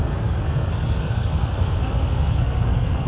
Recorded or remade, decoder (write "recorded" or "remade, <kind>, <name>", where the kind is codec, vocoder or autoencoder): remade, codec, SNAC